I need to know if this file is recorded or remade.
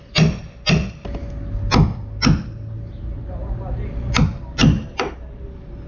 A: recorded